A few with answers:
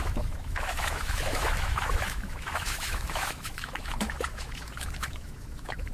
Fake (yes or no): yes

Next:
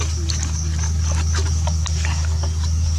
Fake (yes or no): no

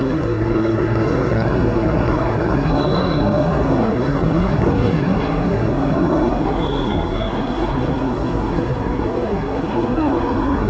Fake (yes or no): yes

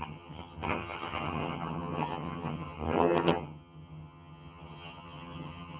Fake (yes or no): yes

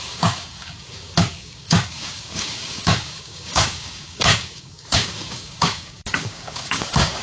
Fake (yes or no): yes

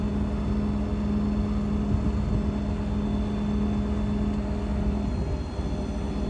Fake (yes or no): no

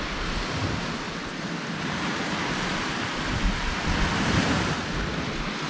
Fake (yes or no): no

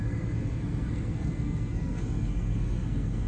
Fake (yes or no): yes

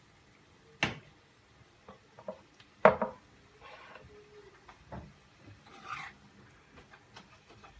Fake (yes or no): no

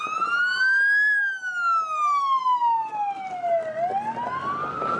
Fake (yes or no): no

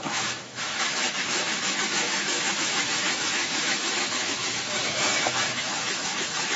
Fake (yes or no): yes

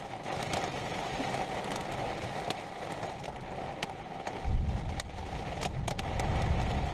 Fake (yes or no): no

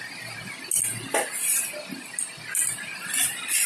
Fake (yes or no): no